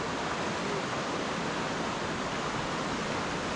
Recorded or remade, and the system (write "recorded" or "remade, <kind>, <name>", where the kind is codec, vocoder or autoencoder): recorded